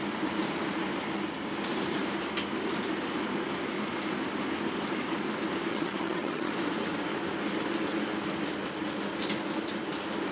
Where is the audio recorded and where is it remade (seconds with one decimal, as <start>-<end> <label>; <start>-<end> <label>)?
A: 0.0-5.7 recorded; 5.7-6.5 remade; 6.5-10.3 recorded